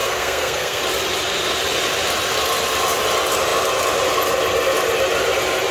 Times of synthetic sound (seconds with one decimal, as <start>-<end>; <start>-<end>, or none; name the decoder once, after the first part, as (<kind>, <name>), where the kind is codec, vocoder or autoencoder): 0.0-0.8 (codec, SNAC)

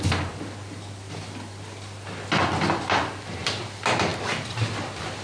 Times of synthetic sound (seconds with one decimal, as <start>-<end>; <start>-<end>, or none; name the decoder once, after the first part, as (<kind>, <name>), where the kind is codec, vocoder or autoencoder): none

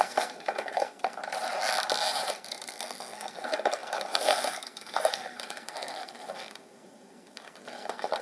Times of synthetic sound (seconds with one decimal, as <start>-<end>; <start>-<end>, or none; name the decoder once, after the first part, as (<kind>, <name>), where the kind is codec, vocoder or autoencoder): 0.0-1.2 (codec, SNAC); 2.3-8.2